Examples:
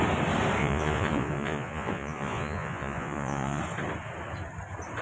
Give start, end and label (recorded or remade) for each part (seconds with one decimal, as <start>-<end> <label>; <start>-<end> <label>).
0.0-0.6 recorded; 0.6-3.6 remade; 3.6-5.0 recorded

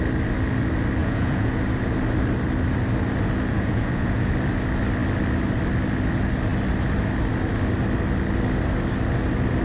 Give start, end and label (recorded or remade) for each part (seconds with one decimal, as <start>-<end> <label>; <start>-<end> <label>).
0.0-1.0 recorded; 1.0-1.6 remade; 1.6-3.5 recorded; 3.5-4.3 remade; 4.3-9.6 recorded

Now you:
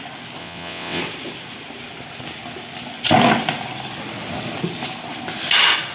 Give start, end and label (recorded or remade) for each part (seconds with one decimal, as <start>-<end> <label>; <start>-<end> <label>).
0.0-0.4 recorded; 0.4-1.0 remade; 1.0-5.9 recorded